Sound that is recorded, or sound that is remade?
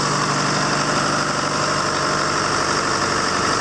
recorded